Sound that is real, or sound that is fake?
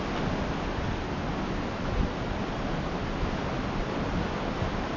real